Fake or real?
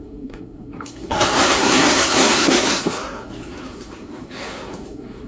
fake